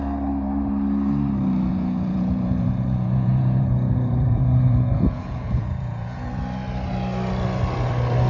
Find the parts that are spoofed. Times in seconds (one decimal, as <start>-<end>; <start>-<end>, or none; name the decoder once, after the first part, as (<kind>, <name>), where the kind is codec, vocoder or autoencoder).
1.7-6.3 (vocoder, Vocos)